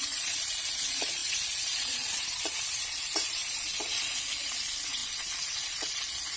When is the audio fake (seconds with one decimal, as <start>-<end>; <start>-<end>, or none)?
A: 0.0-6.4